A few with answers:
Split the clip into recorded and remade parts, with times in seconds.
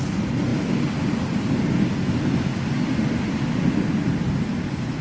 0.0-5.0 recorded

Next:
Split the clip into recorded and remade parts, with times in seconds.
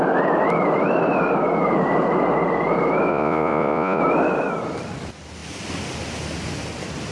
0.0-3.1 recorded; 3.1-4.0 remade; 4.0-7.1 recorded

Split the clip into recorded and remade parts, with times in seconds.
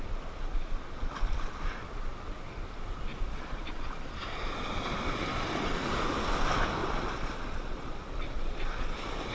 0.0-3.1 recorded; 3.1-4.2 remade; 4.2-5.3 recorded; 5.3-5.9 remade; 5.9-6.8 recorded; 6.8-9.3 remade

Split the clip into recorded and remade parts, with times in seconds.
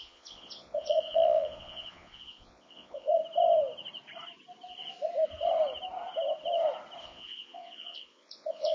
0.0-3.2 remade; 3.2-7.0 recorded; 7.0-8.7 remade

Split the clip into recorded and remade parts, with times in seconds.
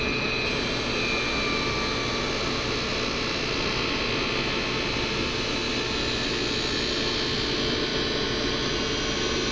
0.0-9.5 recorded